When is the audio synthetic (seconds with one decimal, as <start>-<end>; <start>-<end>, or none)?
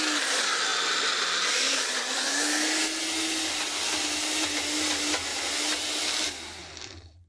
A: none